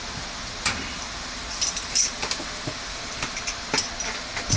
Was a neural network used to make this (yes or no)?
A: no